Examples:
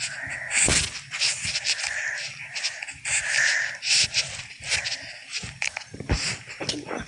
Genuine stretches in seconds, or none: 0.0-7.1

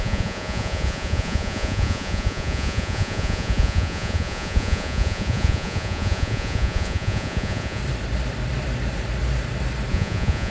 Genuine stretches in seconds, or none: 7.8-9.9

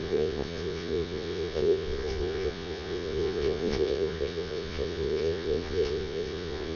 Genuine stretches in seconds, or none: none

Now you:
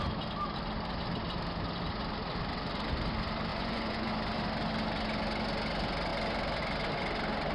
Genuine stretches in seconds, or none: 0.0-3.5; 4.1-7.5

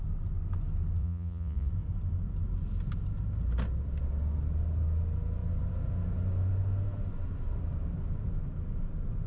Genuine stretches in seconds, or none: 0.0-1.0; 1.7-9.3